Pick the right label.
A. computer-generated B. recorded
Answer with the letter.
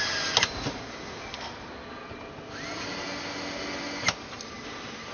B